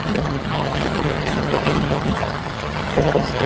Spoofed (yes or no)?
yes